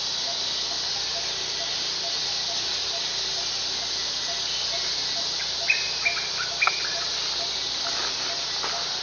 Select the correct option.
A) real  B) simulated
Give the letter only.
A